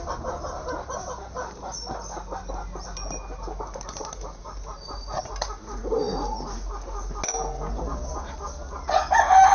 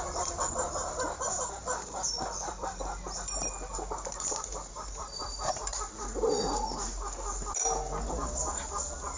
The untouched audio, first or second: first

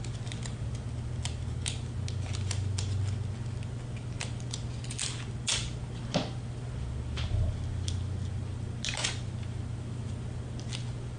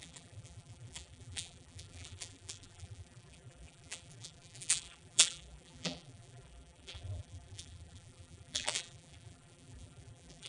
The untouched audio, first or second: first